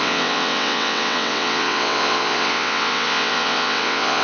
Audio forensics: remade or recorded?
remade